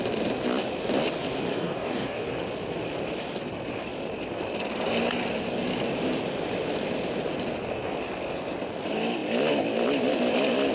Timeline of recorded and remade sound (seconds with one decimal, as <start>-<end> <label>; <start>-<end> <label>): 0.0-1.5 recorded; 1.5-2.3 remade; 2.3-10.7 recorded